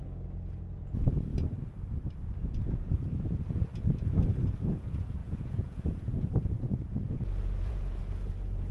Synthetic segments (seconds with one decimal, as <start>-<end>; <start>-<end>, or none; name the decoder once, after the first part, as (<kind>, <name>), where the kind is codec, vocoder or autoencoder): 0.0-1.3 (vocoder, Vocos); 2.4-3.7; 4.6-8.7